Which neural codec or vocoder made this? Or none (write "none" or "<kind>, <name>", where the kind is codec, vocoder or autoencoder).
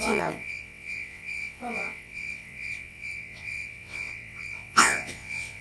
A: vocoder, WaveNeXt